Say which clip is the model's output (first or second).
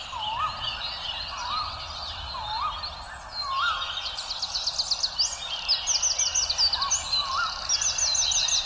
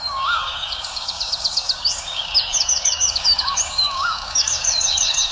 second